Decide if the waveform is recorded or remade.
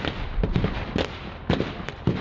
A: recorded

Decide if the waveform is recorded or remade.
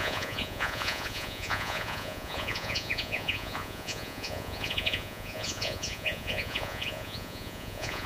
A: remade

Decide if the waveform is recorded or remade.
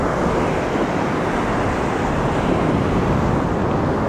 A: recorded